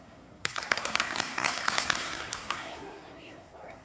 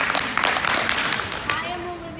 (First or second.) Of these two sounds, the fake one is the first